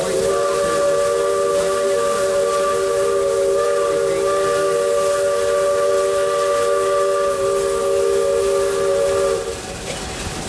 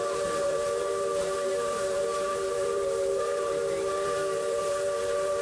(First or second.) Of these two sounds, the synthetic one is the second